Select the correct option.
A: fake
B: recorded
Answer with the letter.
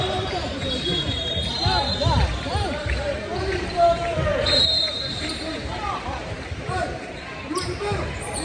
A